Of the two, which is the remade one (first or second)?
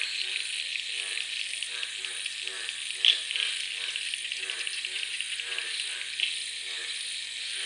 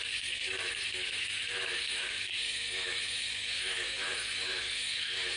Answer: second